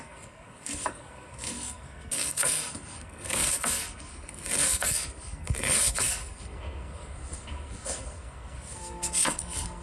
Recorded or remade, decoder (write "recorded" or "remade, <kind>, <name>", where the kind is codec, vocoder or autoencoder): remade, codec, SNAC